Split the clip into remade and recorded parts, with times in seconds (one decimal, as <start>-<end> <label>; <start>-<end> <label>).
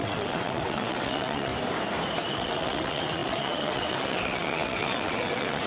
0.0-1.5 remade; 1.5-2.3 recorded; 2.3-5.7 remade